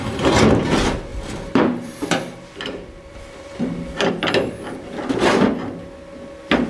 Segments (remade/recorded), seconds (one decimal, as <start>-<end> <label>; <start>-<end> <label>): 0.0-1.1 recorded; 1.1-4.1 remade; 4.1-6.7 recorded